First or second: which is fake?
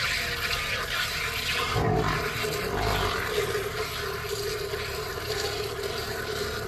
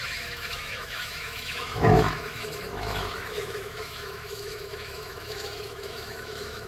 second